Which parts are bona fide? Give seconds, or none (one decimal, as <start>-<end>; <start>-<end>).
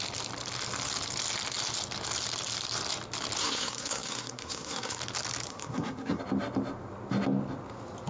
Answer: 0.0-3.4; 5.0-5.5; 6.2-8.1